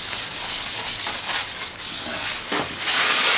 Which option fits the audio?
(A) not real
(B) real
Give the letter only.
A